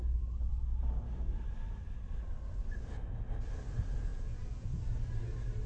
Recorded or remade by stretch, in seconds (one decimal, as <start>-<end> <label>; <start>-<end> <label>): 0.0-4.1 recorded; 4.1-4.8 remade; 4.8-5.7 recorded